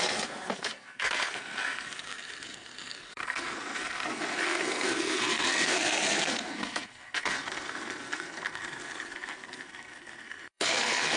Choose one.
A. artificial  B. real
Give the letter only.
A